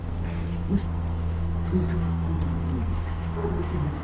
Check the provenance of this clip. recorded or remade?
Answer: remade